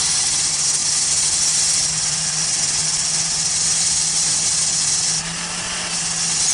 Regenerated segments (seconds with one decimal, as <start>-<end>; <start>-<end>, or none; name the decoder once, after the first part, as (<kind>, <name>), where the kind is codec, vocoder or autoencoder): none